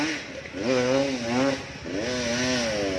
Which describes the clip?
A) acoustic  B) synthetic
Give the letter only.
A